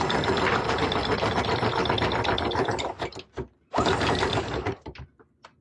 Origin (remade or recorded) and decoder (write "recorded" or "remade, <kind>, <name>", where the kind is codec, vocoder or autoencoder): remade, vocoder, BigVGAN v2